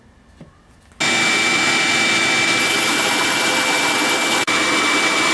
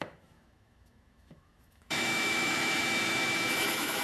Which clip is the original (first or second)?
first